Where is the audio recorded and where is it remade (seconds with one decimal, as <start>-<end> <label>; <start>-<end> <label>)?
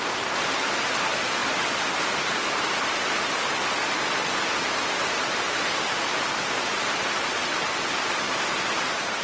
0.0-9.2 recorded